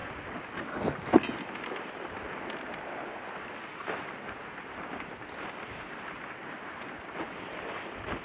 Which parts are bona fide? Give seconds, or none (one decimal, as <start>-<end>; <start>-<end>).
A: 0.0-8.2